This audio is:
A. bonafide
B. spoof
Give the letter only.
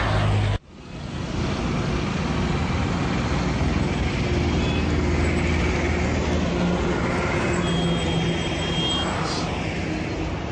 A